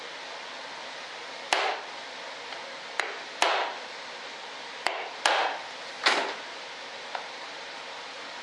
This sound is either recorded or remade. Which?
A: recorded